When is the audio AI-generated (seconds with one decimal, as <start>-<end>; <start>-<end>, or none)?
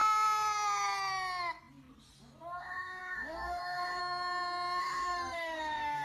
2.6-4.0; 4.8-6.0